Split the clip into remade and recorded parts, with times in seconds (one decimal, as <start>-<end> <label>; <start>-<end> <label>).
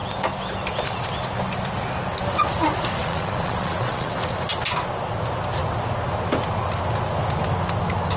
0.0-3.0 recorded; 3.0-4.1 remade; 4.1-8.2 recorded